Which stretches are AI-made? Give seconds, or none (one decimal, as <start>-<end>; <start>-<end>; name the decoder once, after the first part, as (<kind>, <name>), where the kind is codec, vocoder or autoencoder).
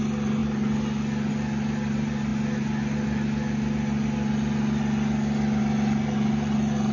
none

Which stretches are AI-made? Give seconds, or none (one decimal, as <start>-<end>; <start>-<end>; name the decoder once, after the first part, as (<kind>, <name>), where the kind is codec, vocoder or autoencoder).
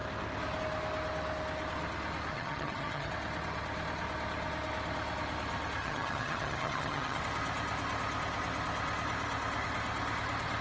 2.3-3.1 (vocoder, HiFi-GAN); 5.8-7.2